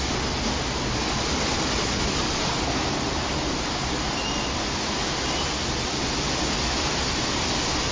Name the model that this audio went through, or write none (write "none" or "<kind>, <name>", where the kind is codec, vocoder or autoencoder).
none